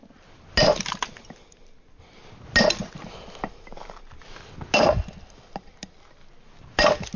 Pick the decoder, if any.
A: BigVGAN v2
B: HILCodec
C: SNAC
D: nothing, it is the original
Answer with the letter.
D